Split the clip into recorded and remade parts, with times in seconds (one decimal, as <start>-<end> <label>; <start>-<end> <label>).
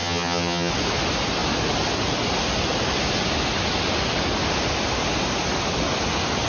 0.0-0.7 remade; 0.7-6.5 recorded